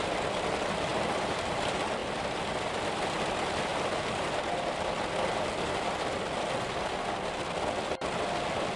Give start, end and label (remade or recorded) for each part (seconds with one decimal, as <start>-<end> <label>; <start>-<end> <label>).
0.0-0.9 recorded; 0.9-1.6 remade; 1.6-3.7 recorded; 3.7-4.3 remade; 4.3-8.8 recorded